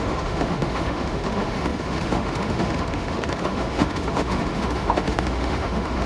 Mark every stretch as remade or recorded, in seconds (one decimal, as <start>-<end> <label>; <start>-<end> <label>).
0.0-6.1 remade